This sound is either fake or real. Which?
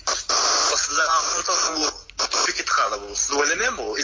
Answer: real